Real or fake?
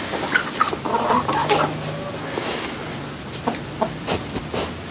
real